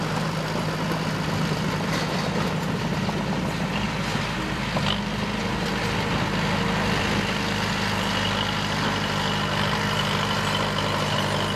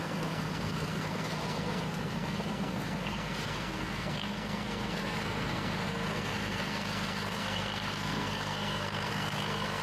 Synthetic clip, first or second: second